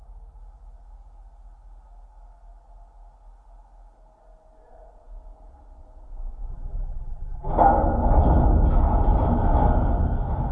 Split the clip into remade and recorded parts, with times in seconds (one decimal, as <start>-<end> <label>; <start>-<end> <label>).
0.0-6.5 recorded; 6.5-7.5 remade; 7.5-10.5 recorded